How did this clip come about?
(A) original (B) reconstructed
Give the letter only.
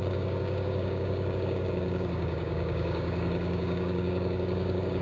B